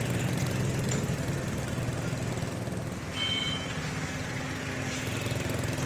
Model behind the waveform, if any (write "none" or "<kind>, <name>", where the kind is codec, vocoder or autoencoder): none